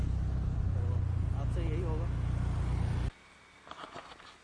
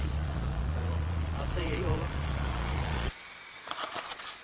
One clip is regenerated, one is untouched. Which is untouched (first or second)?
first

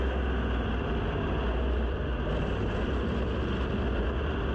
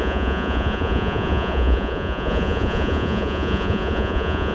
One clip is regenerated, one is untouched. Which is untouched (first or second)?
first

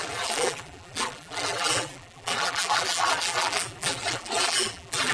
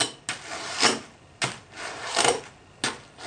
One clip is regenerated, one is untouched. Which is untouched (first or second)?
second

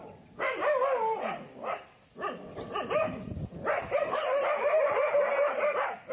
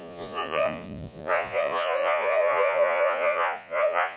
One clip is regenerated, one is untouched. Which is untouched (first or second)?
first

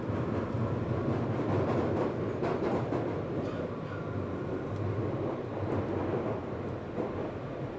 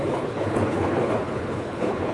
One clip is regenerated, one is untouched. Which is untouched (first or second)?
first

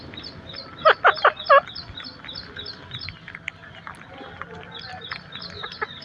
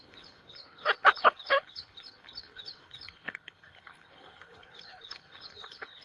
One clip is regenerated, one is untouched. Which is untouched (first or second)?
first